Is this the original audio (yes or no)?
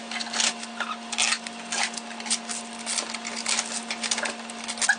yes